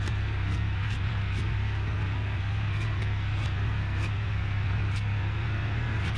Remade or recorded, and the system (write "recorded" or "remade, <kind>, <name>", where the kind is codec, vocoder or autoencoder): remade, codec, SNAC